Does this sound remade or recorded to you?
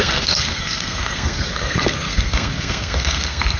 remade